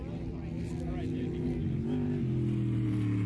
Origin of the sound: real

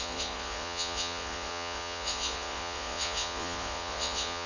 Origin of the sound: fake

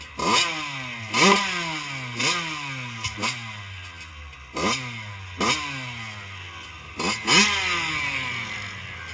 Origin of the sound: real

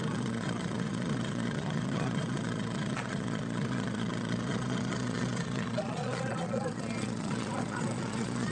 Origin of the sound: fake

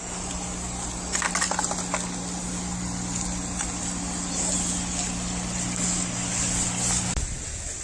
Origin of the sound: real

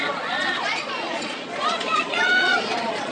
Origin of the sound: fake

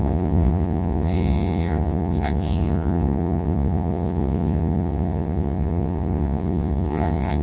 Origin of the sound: fake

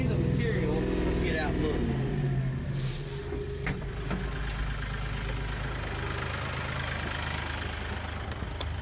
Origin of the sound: real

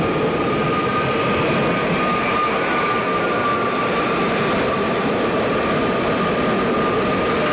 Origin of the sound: real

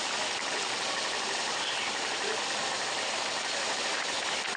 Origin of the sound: real